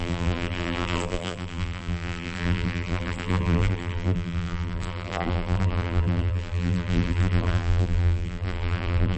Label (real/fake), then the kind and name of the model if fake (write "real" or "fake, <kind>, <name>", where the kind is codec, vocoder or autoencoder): fake, vocoder, BigVGAN v2